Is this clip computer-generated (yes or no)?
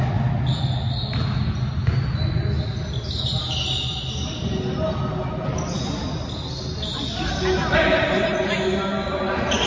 no